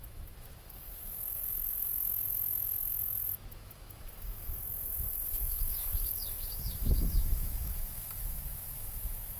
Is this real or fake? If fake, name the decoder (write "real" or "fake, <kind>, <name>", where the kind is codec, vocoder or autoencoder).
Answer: fake, autoencoder, DAC-VAE